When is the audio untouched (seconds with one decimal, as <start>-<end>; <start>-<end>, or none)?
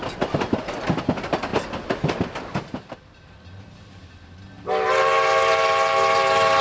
0.0-6.6